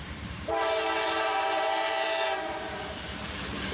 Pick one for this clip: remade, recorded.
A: remade